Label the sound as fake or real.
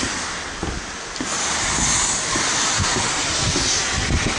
real